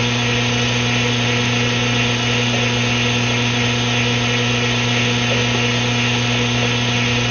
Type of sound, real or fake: real